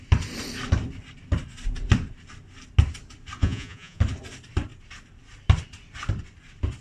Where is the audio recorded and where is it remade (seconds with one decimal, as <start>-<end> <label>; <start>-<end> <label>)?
0.0-3.4 recorded; 3.4-4.0 remade; 4.0-6.8 recorded